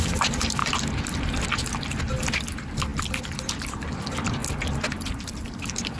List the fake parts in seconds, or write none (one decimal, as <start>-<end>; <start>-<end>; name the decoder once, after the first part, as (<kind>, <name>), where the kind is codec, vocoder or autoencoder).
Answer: 2.9-4.0 (vocoder, BigVGAN v2)